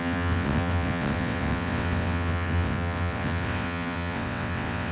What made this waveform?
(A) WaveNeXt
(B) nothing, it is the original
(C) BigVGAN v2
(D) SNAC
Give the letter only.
A